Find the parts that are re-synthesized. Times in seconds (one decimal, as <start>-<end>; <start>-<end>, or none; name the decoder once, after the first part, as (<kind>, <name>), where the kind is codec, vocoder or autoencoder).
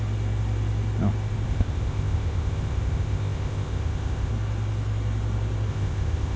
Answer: 1.5-4.3 (codec, ZipCodec); 5.7-6.4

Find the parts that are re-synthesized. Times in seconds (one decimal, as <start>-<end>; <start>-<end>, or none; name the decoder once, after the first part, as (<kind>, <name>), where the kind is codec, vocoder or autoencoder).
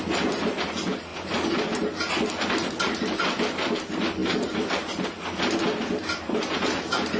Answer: none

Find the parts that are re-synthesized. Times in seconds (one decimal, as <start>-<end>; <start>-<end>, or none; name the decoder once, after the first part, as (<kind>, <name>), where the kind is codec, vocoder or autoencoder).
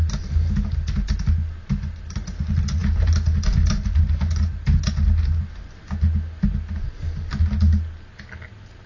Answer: none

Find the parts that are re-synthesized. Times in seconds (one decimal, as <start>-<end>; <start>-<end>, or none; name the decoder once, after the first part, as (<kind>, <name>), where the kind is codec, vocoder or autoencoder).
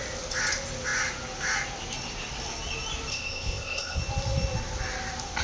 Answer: 3.1-4.0 (codec, ZipCodec)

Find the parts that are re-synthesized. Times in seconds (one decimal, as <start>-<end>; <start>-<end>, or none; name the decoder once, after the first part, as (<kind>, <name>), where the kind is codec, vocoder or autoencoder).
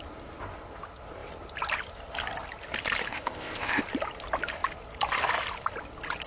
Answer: 3.1-3.8 (codec, ZipCodec)